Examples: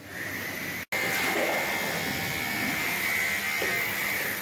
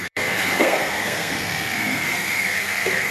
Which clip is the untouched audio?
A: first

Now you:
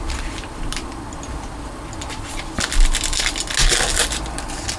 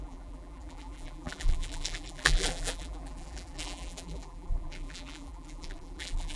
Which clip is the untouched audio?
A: first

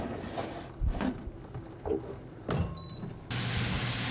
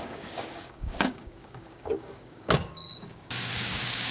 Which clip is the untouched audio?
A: first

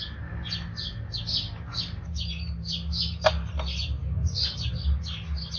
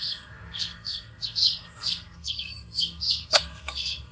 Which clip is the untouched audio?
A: first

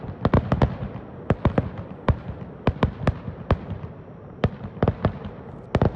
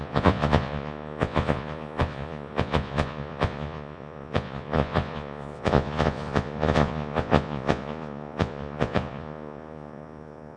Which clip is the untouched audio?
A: first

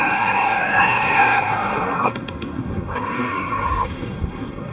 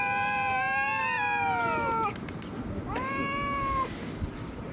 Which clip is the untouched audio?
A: second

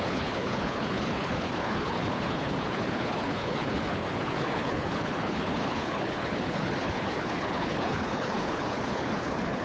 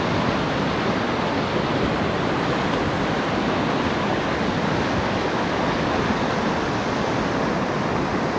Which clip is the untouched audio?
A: second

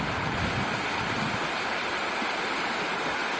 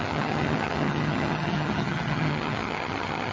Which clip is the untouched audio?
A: first